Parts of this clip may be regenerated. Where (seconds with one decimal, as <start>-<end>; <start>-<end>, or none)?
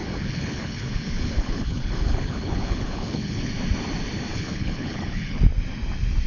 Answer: 0.0-3.5; 4.3-5.4